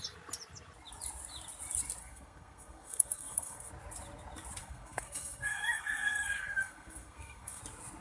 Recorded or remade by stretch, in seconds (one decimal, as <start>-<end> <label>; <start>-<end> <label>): 0.0-2.0 recorded; 2.0-3.7 remade; 3.7-4.6 recorded; 4.6-7.6 remade; 7.6-8.0 recorded